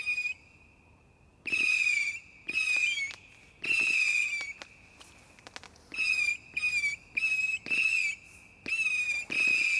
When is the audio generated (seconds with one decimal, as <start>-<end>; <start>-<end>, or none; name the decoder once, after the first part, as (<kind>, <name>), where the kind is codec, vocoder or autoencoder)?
1.3-2.2 (vocoder, BigVGAN v2)